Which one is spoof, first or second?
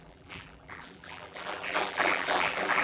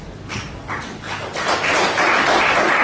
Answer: first